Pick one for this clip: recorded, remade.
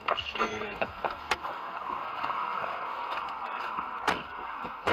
remade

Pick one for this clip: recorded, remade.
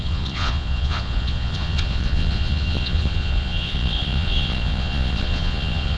remade